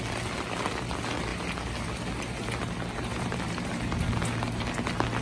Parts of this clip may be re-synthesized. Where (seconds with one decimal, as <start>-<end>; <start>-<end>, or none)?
1.3-1.9; 3.1-3.7